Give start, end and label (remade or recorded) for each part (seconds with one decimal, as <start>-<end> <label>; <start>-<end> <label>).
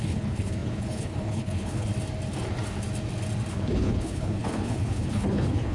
0.0-1.9 remade; 1.9-3.5 recorded; 3.5-5.7 remade